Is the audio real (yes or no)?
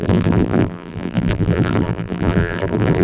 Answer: no